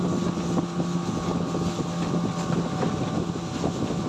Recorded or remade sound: recorded